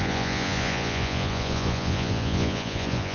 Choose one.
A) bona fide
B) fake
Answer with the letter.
B